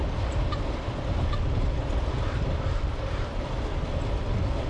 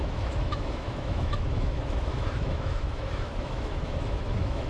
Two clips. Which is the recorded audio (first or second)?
first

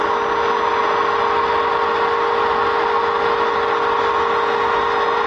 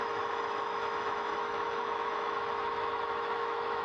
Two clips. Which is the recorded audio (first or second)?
first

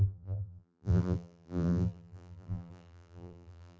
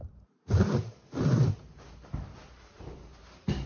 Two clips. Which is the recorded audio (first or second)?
second